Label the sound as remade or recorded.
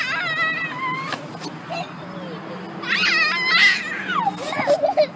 recorded